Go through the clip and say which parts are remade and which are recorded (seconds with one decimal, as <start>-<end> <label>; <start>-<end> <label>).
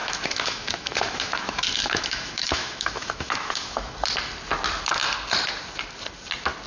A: 0.0-3.9 remade; 3.9-6.7 recorded